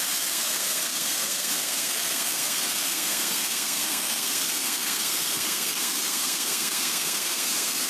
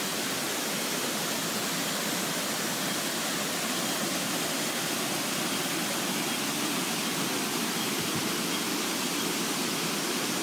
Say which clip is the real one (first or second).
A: second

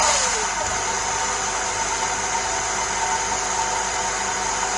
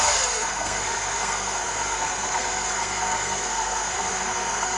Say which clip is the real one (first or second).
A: first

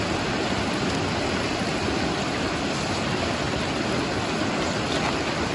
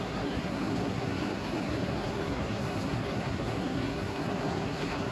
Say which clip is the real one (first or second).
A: first